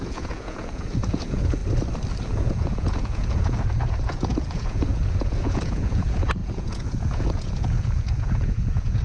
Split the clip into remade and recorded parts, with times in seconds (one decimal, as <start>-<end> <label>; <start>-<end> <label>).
0.0-1.6 remade; 1.6-2.3 recorded; 2.3-9.0 remade